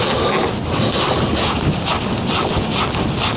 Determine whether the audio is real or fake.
real